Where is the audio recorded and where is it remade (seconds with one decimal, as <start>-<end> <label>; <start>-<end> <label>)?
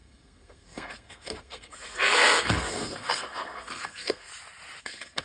0.0-4.3 remade; 4.3-4.8 recorded; 4.8-5.2 remade